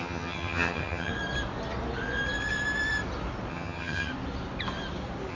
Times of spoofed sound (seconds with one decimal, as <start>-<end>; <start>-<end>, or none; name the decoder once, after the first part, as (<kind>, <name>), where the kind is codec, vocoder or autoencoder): 0.0-1.1 (vocoder, HiFi-GAN); 3.5-4.1